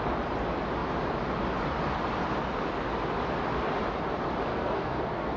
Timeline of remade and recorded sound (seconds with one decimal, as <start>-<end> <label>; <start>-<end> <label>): 0.0-4.5 recorded; 4.5-5.4 remade